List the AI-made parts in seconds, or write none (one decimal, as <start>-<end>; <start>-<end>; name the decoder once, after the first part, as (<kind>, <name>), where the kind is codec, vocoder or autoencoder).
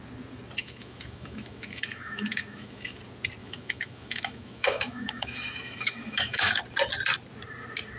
0.6-3.0 (autoencoder, DAC-VAE); 3.4-6.6